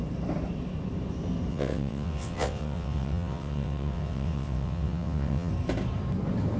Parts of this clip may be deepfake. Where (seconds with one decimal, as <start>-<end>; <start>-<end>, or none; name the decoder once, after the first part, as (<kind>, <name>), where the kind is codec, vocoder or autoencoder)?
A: 1.5-5.5 (vocoder, WaveNeXt)